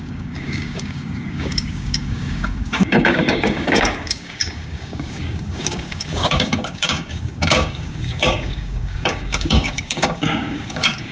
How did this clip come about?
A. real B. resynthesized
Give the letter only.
B